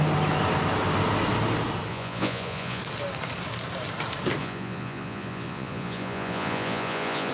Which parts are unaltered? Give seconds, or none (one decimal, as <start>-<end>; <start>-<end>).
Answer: 0.0-1.9; 2.8-4.4

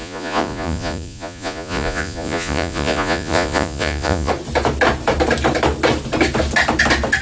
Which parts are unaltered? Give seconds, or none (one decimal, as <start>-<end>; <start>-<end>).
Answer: 4.3-7.2

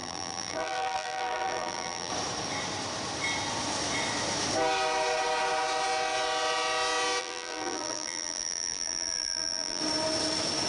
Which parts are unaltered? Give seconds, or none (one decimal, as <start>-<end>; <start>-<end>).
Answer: 2.1-7.2; 9.8-10.7

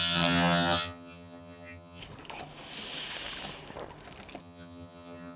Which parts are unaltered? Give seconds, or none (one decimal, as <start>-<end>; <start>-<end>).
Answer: 2.0-4.4

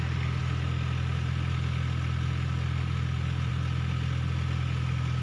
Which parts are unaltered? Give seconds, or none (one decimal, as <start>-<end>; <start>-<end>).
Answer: 0.0-5.2

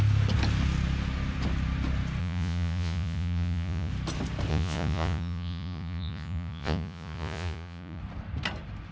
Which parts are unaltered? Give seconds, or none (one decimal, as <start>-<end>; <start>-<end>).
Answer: 0.0-2.2; 3.9-4.5; 8.0-8.9

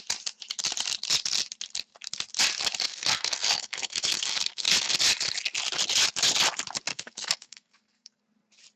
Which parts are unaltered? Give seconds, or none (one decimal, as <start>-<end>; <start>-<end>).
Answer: 0.0-2.9; 5.0-6.9; 8.2-8.8